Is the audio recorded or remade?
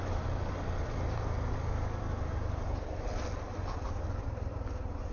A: recorded